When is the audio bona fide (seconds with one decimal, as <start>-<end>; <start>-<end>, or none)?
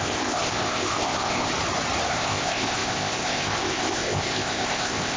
1.5-2.1